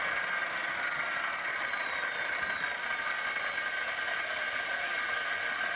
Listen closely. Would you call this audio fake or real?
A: real